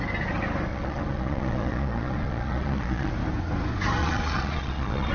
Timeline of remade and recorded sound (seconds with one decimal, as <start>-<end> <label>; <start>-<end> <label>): 0.0-0.7 recorded; 0.7-3.1 remade; 3.1-4.0 recorded; 4.0-5.1 remade